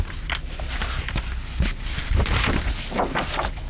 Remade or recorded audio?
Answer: recorded